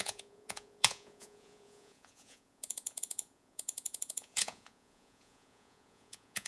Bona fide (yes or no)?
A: no